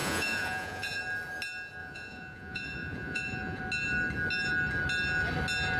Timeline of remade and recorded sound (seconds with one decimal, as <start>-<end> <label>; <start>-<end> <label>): 0.0-1.0 remade; 1.0-1.8 recorded; 1.8-3.6 remade; 3.6-5.8 recorded